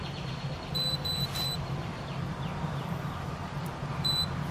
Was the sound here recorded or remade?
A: remade